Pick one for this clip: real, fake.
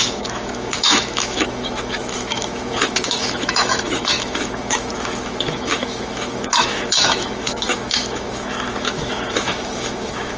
fake